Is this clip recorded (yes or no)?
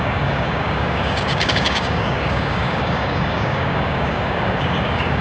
no